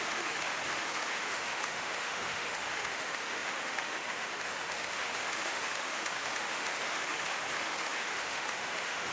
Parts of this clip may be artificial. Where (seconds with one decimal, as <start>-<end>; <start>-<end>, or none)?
0.0-9.1